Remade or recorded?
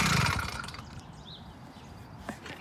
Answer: recorded